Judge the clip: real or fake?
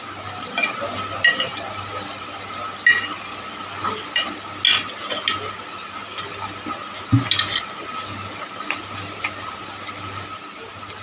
real